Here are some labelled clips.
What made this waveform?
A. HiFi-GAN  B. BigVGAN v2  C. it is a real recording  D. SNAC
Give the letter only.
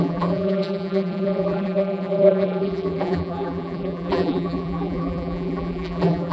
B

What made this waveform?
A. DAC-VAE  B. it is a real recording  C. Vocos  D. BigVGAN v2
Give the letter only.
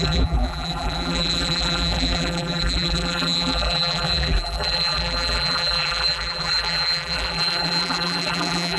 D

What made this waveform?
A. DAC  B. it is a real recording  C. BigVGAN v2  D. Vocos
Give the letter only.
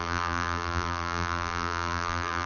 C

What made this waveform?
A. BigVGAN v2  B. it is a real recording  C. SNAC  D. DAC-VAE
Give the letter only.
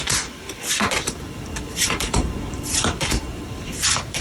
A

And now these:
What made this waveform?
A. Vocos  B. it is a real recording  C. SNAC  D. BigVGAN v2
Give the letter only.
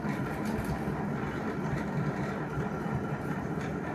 D